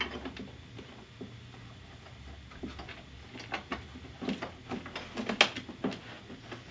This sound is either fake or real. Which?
real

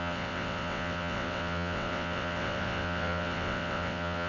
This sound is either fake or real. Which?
fake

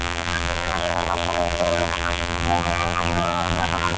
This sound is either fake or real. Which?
fake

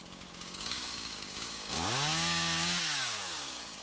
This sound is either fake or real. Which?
fake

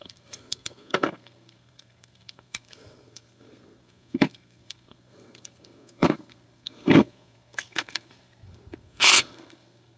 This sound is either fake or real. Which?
fake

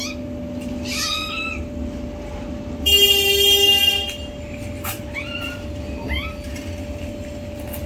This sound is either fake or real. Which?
real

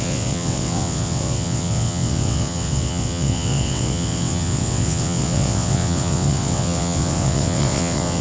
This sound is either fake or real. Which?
fake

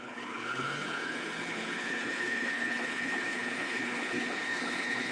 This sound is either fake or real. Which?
fake